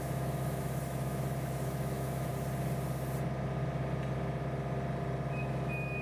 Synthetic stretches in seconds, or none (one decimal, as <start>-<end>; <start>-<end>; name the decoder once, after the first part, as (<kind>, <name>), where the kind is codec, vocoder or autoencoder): 0.0-2.3 (autoencoder, DAC-VAE); 5.3-6.0